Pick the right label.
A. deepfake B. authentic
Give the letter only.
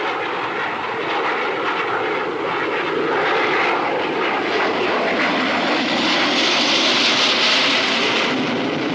B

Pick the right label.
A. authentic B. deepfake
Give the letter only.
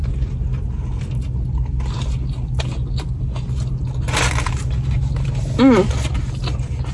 A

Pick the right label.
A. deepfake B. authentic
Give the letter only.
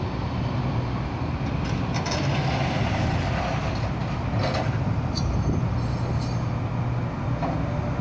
B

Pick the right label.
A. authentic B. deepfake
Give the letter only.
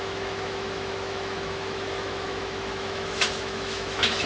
B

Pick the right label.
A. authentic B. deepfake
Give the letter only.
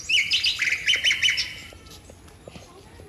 A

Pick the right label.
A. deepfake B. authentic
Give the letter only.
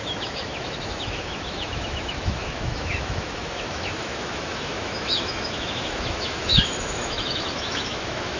A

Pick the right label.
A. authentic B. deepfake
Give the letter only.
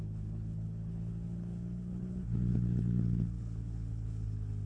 B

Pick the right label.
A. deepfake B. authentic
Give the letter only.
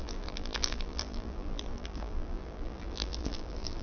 A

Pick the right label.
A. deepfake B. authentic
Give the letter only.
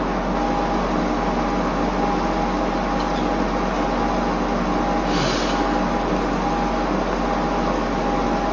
B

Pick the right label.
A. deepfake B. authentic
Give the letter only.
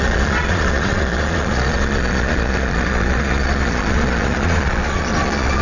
A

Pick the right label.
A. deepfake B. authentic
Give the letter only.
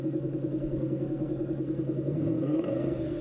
A